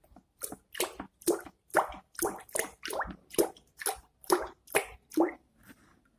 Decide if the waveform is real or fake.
real